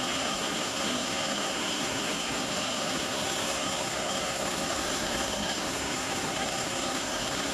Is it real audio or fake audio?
fake